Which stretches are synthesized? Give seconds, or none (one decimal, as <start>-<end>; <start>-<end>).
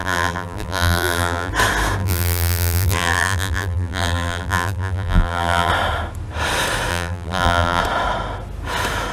0.0-1.5; 2.0-5.7; 6.9-7.8